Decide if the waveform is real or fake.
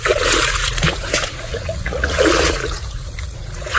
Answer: fake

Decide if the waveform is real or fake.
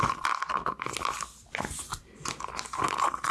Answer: real